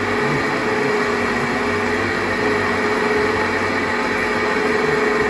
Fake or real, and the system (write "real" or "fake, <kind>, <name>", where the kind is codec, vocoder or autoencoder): real